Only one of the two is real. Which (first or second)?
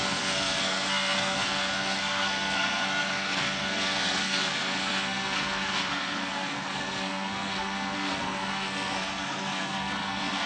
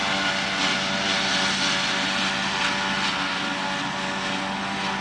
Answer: second